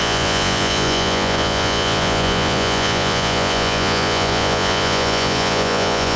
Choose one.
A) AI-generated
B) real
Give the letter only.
A